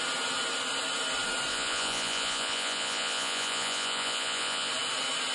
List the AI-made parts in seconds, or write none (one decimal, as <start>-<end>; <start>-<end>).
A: 1.5-4.7